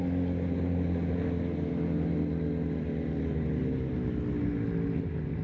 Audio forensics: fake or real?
real